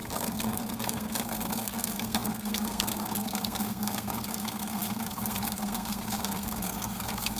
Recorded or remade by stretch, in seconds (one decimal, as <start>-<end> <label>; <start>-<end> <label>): 0.0-7.4 remade